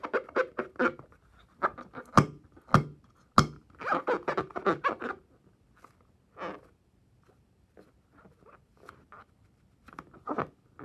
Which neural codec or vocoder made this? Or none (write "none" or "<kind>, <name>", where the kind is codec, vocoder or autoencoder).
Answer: none